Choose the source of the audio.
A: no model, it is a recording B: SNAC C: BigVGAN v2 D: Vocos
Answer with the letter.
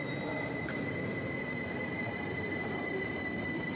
C